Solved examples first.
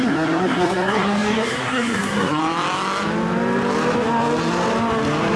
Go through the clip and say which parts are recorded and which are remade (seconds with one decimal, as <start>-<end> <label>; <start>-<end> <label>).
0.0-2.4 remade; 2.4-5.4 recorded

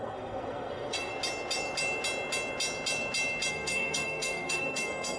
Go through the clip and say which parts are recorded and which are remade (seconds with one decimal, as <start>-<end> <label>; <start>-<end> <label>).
0.0-1.1 remade; 1.1-3.5 recorded; 3.5-5.2 remade

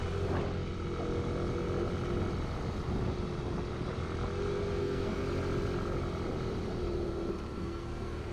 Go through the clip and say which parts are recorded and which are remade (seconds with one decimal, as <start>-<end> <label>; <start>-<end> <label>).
0.0-4.8 recorded; 4.8-5.2 remade; 5.2-7.6 recorded; 7.6-8.3 remade

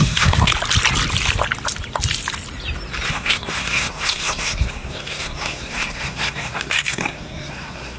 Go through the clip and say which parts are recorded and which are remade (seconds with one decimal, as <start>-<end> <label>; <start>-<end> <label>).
0.0-0.5 remade; 0.5-3.1 recorded; 3.1-8.0 remade

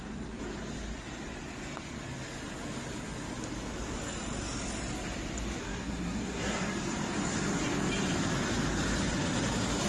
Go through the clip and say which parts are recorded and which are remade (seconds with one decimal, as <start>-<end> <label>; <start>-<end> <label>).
0.0-5.6 recorded; 5.6-6.7 remade; 6.7-9.9 recorded